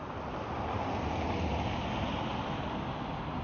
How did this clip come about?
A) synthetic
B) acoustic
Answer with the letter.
B